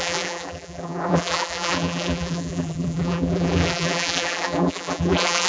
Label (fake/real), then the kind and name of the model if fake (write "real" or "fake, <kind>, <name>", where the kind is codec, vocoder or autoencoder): fake, vocoder, BigVGAN v2